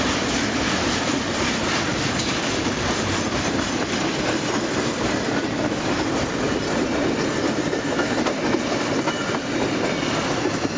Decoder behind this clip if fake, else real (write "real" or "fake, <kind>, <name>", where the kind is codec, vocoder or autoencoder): fake, vocoder, BigVGAN v2